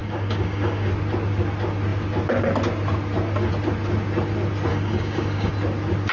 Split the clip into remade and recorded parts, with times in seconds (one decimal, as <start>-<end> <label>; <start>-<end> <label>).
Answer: 0.0-0.9 remade; 0.9-4.7 recorded; 4.7-5.5 remade; 5.5-6.1 recorded